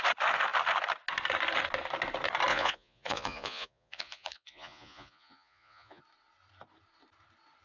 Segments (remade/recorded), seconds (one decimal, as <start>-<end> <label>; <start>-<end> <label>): 0.0-2.5 recorded; 2.5-6.0 remade; 6.0-7.6 recorded